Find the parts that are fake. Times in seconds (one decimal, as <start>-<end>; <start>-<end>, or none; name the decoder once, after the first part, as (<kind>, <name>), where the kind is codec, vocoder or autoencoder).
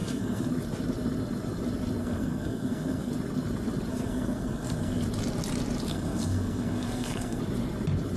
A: 0.0-0.5 (codec, SNAC); 2.0-3.1; 3.9-5.0; 5.9-7.4